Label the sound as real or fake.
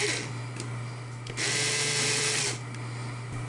real